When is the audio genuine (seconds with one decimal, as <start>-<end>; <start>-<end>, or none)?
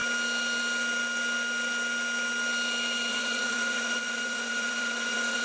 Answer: 0.0-3.1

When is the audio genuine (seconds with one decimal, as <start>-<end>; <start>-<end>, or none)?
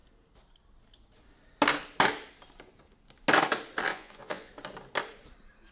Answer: 0.0-3.9; 4.5-5.7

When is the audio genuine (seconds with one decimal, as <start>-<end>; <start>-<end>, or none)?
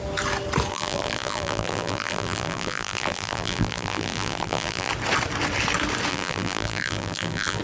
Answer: 0.0-0.7; 4.9-6.1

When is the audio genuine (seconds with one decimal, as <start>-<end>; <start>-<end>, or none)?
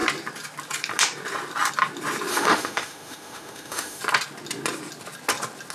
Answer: 0.0-2.3; 4.0-5.7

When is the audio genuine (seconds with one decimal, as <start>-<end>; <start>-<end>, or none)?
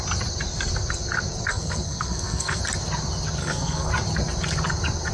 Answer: 0.0-1.5; 2.6-3.4; 3.9-5.1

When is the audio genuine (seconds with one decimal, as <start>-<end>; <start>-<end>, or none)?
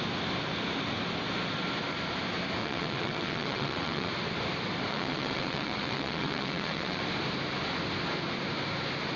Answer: 0.0-2.6; 4.1-4.9; 7.0-9.2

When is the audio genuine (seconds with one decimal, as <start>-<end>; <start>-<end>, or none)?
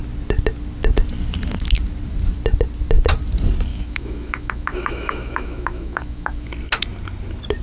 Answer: 0.0-3.7; 6.5-7.6